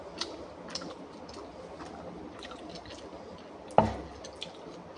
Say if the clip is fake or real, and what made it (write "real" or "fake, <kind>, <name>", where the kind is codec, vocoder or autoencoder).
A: real